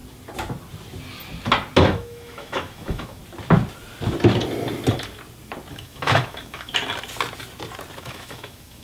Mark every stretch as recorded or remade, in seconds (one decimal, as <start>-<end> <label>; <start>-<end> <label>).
0.0-1.8 recorded; 1.8-3.2 remade; 3.2-5.7 recorded; 5.7-6.7 remade; 6.7-8.0 recorded; 8.0-8.8 remade